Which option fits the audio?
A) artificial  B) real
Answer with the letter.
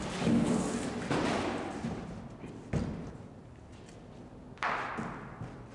B